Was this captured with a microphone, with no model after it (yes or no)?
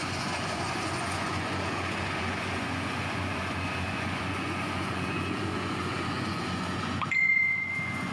no